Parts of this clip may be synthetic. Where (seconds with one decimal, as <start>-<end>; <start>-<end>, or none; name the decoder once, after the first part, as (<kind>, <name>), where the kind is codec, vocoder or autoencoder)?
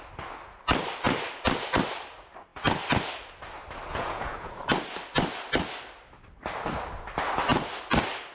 3.9-4.7 (vocoder, Vocos)